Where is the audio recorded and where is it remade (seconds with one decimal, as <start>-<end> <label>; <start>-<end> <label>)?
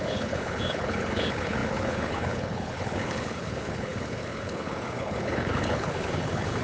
0.0-6.6 remade